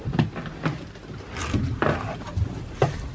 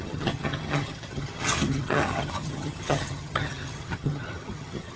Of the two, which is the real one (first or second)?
first